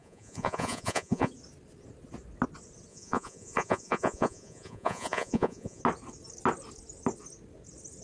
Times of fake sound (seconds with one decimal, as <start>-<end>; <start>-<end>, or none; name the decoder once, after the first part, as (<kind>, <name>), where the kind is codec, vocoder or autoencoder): 0.0-1.3 (vocoder, Vocos); 2.9-5.8